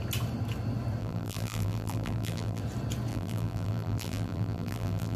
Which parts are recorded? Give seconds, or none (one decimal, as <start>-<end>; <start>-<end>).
0.0-1.0; 2.6-3.1